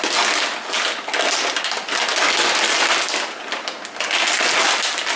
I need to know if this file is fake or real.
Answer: real